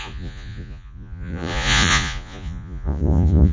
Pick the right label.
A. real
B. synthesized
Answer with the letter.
B